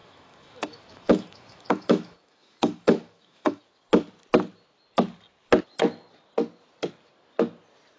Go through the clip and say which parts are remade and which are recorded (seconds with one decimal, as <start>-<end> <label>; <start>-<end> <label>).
0.0-3.6 remade; 3.6-8.0 recorded